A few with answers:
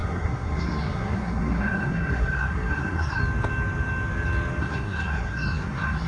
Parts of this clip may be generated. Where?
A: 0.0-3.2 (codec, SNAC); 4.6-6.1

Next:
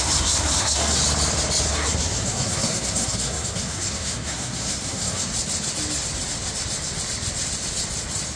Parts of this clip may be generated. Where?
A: 0.0-1.0 (codec, SNAC); 1.7-5.3